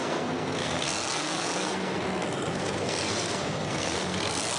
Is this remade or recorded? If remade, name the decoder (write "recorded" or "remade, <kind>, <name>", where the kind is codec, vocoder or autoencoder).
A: remade, codec, SNAC